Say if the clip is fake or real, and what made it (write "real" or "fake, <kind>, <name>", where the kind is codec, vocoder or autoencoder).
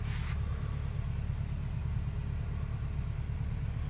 real